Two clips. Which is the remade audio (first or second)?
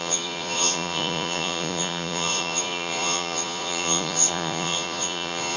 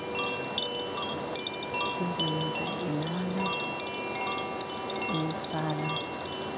first